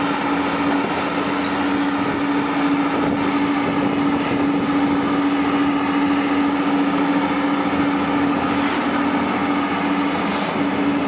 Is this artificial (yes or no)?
no